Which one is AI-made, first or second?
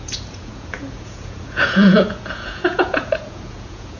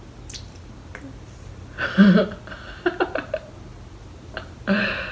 first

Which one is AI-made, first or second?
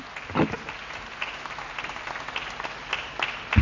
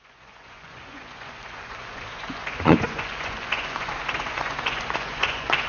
second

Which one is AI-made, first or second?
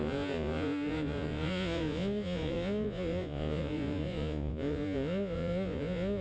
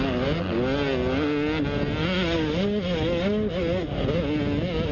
first